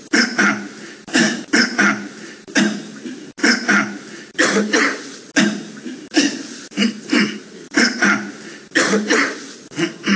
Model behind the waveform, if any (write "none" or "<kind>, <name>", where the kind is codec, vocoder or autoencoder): none